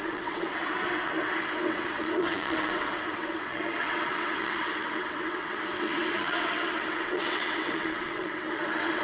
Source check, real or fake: fake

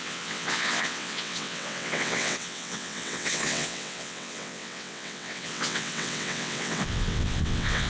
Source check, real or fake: fake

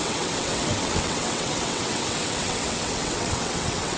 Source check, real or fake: fake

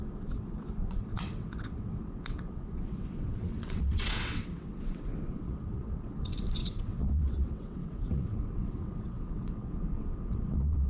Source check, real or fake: fake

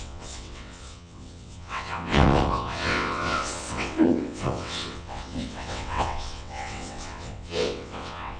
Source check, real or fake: fake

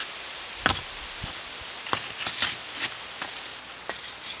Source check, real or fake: real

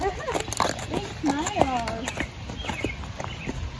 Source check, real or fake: real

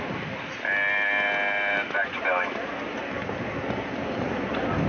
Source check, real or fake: real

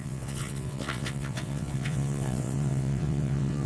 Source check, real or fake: fake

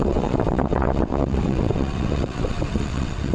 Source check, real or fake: fake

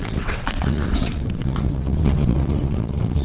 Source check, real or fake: fake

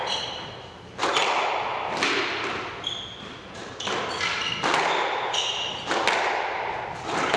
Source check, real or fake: real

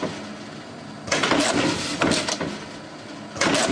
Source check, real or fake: real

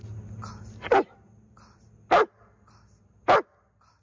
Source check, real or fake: real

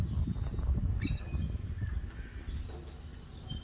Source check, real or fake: real